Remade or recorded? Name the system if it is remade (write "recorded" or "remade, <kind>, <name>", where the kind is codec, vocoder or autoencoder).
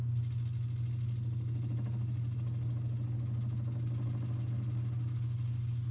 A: recorded